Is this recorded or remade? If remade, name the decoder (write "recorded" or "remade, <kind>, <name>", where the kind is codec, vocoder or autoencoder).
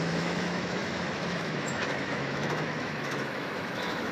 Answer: remade, autoencoder, DAC-VAE